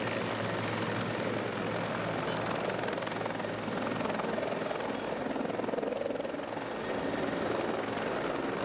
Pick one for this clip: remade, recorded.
recorded